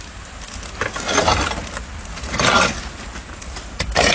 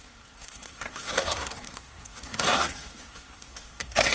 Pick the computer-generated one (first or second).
second